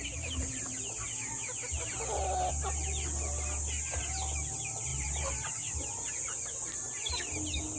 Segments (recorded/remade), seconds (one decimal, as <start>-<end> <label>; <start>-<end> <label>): 0.0-4.9 recorded; 4.9-5.5 remade; 5.5-6.5 recorded; 6.5-7.1 remade; 7.1-7.8 recorded